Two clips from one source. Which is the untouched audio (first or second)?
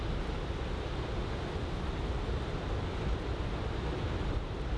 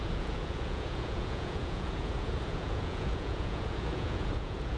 first